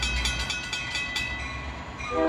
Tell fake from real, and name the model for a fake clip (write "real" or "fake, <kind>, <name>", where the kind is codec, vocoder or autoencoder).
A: real